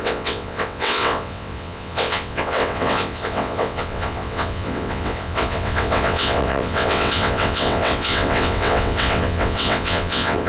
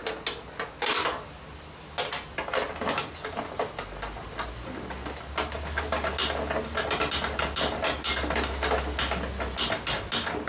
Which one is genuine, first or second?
second